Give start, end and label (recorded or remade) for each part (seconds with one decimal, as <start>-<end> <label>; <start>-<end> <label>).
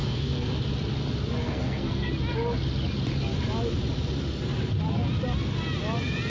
0.0-0.5 remade; 0.5-1.4 recorded; 1.4-2.1 remade; 2.1-6.3 recorded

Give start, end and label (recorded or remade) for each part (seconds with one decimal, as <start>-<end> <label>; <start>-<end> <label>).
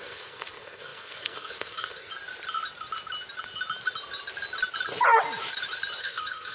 0.0-2.1 remade; 2.1-6.0 recorded; 6.0-6.5 remade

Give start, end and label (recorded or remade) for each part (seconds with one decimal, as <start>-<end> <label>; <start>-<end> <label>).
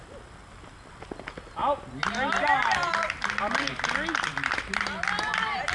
0.0-5.7 recorded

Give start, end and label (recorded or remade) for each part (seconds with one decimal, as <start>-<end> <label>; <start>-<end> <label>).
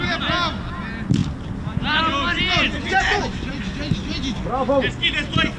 0.0-5.6 recorded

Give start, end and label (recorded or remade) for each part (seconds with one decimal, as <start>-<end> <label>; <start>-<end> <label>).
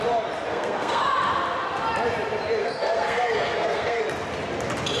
0.0-0.5 recorded; 0.5-1.0 remade; 1.0-2.6 recorded; 2.6-4.0 remade; 4.0-5.0 recorded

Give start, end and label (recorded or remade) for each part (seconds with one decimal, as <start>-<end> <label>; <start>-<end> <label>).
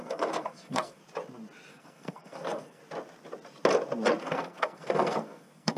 0.0-1.0 remade; 1.0-1.7 recorded; 1.7-2.8 remade; 2.8-4.2 recorded; 4.2-5.8 remade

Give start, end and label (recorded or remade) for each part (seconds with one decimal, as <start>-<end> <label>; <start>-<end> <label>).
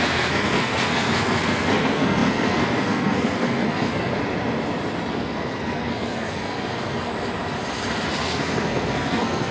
0.0-4.1 remade; 4.1-5.1 recorded; 5.1-7.1 remade; 7.1-8.2 recorded; 8.2-9.5 remade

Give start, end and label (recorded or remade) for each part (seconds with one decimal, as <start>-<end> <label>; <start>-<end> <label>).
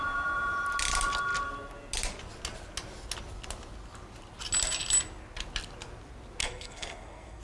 0.0-6.4 recorded; 6.4-7.4 remade